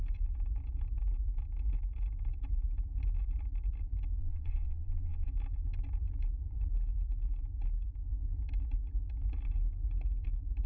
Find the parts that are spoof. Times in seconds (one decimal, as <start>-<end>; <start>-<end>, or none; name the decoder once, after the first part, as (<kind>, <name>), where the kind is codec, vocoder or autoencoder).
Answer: 4.2-5.3 (vocoder, Vocos)

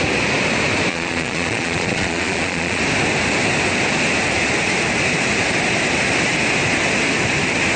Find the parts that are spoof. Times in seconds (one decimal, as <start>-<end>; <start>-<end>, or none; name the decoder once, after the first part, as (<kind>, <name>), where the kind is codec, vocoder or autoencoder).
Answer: 0.9-2.8 (vocoder, Vocos)